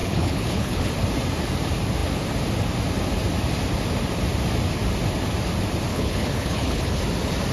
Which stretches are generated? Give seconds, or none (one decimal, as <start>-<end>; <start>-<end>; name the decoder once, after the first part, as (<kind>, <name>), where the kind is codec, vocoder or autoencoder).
0.0-0.9 (codec, HILCodec); 5.9-7.0